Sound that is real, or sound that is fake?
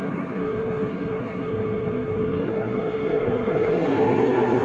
fake